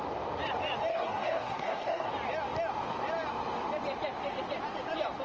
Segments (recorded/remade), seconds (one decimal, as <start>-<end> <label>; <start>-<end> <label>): 0.0-0.9 recorded; 0.9-2.1 remade; 2.1-5.2 recorded